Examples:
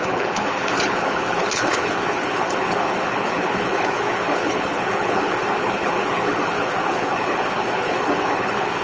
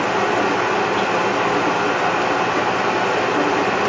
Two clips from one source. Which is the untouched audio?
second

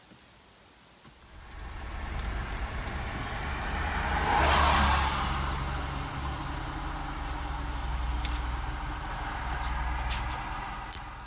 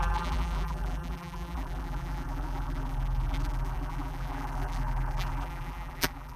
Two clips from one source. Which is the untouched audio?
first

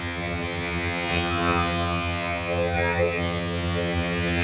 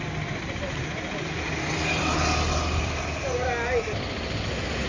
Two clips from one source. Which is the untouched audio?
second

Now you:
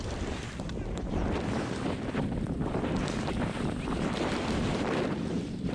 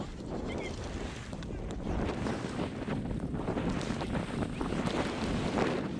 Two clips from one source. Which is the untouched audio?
second